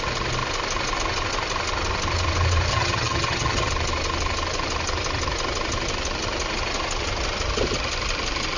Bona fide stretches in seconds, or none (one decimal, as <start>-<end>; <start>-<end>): 0.0-2.7; 3.7-8.6

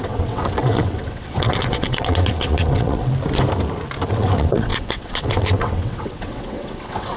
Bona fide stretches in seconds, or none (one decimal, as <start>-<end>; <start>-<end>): 3.1-4.1

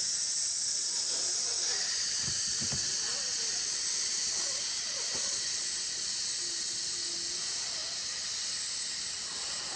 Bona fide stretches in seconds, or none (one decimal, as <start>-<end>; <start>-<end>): 0.0-9.8